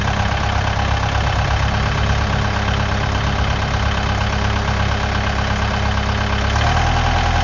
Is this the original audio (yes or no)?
yes